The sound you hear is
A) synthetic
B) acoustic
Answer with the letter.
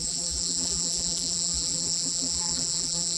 A